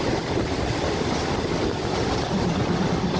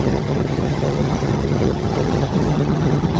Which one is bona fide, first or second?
first